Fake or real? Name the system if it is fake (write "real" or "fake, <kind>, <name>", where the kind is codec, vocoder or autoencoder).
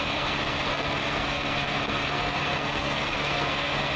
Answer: fake, codec, SNAC